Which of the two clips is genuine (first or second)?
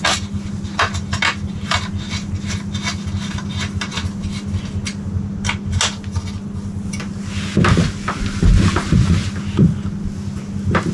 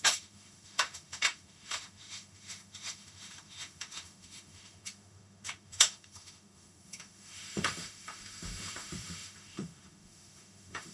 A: first